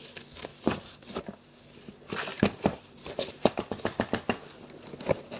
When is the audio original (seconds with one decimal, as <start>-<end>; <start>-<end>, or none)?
0.0-2.3; 3.8-5.4